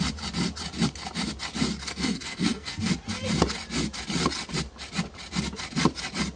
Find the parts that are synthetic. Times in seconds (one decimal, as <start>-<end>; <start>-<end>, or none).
1.8-2.9